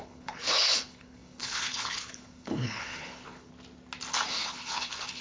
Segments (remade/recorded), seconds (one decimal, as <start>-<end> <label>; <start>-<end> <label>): 0.0-3.5 remade; 3.5-4.3 recorded; 4.3-5.2 remade

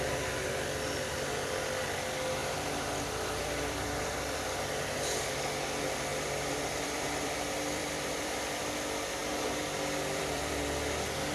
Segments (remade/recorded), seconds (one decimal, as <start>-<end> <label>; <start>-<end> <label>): 0.0-2.4 recorded; 2.4-5.3 remade; 5.3-6.1 recorded; 6.1-8.4 remade; 8.4-9.2 recorded; 9.2-10.6 remade; 10.6-11.3 recorded